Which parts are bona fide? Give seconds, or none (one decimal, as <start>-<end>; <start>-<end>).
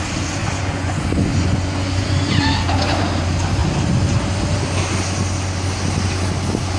0.0-0.4; 2.4-6.8